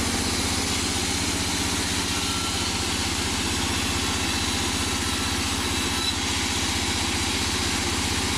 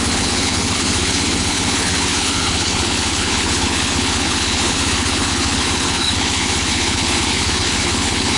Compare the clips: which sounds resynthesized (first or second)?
second